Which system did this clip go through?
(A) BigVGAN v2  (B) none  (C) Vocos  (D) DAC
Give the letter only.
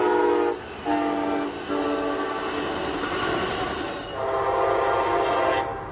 B